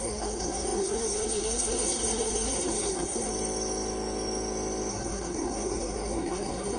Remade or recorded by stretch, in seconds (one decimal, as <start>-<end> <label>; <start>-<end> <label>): 0.0-3.3 remade; 3.3-4.9 recorded; 4.9-6.8 remade